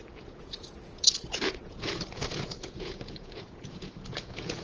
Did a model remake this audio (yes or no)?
yes